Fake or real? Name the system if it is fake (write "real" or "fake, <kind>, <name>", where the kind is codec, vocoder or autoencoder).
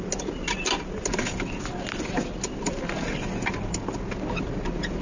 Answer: real